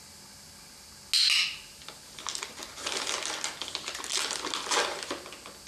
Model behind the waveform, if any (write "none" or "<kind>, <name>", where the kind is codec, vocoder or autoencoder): none